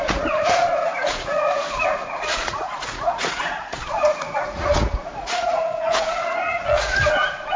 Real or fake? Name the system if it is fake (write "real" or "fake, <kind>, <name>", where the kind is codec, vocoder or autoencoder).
fake, vocoder, Vocos